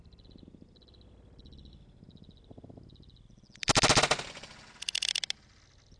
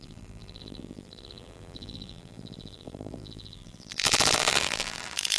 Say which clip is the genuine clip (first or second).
first